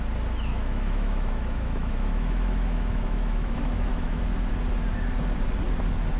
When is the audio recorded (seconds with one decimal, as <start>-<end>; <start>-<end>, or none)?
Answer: 0.0-0.5; 4.2-6.2